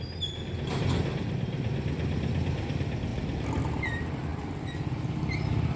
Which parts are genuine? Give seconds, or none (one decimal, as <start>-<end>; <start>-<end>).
0.0-5.8